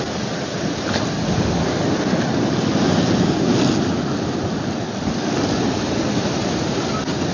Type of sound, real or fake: real